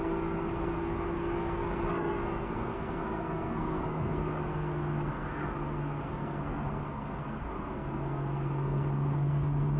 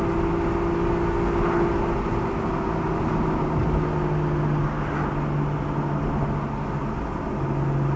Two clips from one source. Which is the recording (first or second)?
second